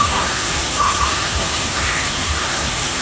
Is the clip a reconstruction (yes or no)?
yes